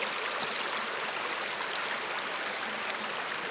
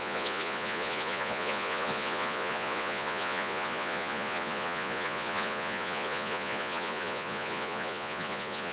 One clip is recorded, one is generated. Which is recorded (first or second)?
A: first